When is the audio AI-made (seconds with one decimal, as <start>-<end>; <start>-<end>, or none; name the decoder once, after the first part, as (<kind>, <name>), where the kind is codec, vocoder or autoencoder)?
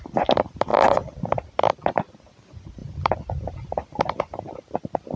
0.7-2.3 (vocoder, BigVGAN v2)